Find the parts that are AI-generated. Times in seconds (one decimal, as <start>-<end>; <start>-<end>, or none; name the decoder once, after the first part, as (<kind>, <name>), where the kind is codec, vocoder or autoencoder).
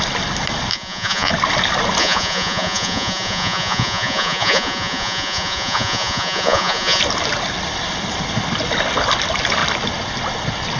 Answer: 0.7-1.3 (vocoder, Vocos); 2.0-7.0